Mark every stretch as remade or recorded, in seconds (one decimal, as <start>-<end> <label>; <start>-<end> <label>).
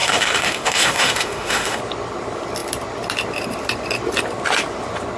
0.0-1.8 remade; 1.8-5.2 recorded